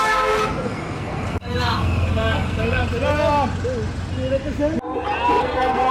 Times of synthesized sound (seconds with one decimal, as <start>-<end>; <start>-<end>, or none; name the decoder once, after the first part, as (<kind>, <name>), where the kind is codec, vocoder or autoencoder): 0.0-2.8 (codec, SNAC); 5.4-5.9